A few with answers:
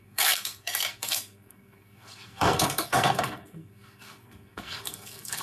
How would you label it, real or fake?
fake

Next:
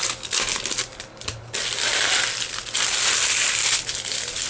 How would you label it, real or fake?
real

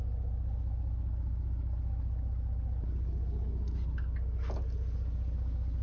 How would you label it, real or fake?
real